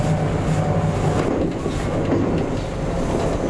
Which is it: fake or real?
real